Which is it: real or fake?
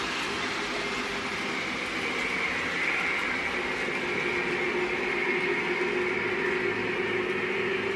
real